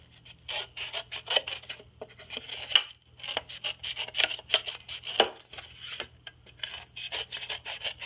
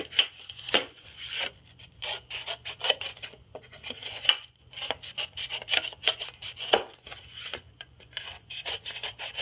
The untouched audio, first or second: first